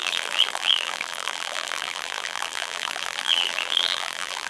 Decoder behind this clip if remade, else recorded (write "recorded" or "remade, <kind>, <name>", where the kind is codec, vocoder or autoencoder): remade, vocoder, BigVGAN v2